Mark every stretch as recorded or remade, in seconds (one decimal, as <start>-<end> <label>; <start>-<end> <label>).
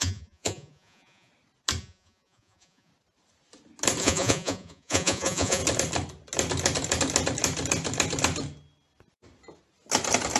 0.0-1.3 remade; 1.3-1.8 recorded; 1.8-2.9 remade; 2.9-4.0 recorded; 4.0-5.6 remade; 5.6-10.4 recorded